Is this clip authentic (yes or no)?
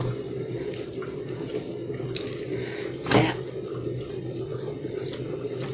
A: yes